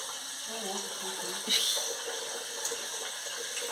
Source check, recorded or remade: recorded